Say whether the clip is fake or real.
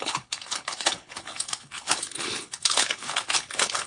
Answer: fake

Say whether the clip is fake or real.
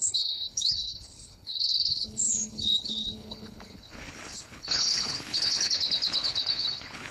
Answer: fake